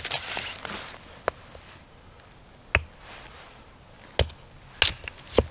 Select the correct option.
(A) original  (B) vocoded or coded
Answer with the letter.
A